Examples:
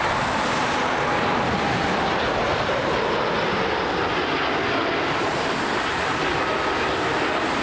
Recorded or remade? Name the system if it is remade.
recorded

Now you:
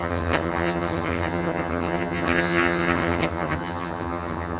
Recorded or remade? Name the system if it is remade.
remade, vocoder, HiFi-GAN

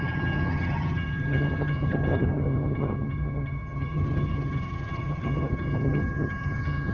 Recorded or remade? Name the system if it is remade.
remade, vocoder, HiFi-GAN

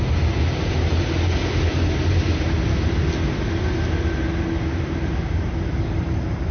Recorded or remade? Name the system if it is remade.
recorded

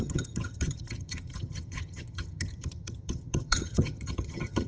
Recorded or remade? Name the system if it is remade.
remade, vocoder, HiFi-GAN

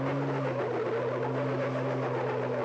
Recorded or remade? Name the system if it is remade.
recorded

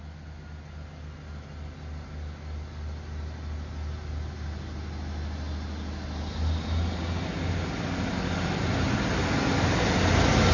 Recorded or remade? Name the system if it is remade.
recorded